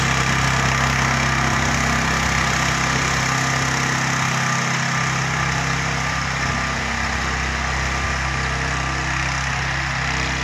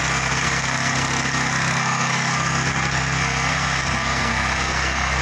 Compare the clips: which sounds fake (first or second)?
second